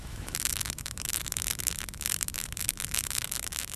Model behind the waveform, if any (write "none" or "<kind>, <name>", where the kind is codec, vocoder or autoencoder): autoencoder, DAC-VAE